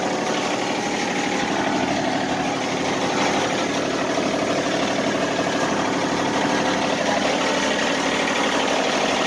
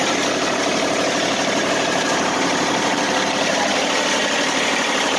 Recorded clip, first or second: first